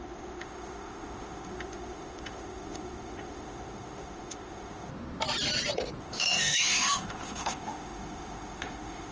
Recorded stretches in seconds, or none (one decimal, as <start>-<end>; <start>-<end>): 4.9-6.0